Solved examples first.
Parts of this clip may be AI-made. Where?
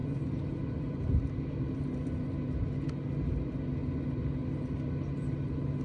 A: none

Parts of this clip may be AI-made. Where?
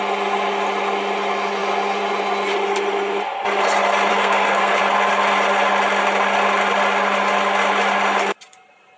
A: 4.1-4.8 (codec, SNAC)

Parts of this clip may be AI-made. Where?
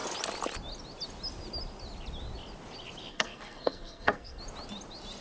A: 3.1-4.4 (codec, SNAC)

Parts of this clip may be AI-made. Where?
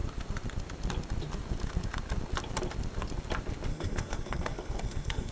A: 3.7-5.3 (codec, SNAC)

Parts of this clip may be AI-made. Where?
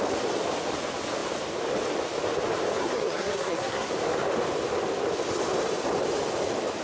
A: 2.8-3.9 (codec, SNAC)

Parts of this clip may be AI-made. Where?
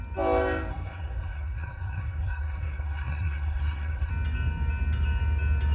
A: 0.7-4.1 (codec, SNAC)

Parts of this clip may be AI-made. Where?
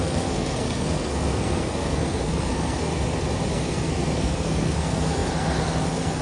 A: 0.0-2.9 (codec, SNAC); 3.5-6.2